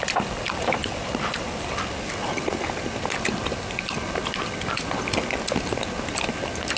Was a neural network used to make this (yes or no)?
no